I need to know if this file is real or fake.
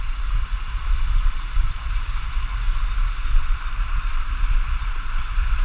real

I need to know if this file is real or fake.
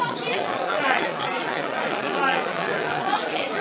fake